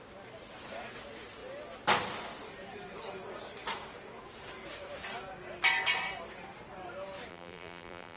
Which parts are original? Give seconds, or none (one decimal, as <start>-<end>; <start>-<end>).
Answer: 0.0-7.3